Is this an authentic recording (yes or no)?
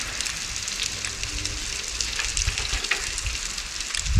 yes